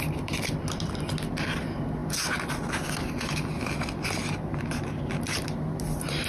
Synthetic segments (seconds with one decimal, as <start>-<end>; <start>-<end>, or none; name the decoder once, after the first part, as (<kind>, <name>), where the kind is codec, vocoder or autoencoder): none